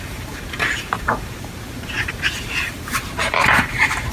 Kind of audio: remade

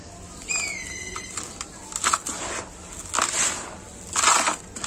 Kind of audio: recorded